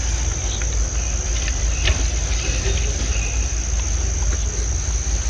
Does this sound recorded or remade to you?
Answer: recorded